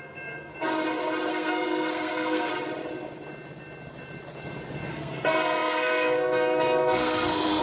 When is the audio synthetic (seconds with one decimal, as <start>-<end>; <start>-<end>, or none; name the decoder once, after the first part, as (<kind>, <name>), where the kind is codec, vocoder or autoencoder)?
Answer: 0.0-0.5 (codec, SNAC); 1.3-2.5; 4.9-7.6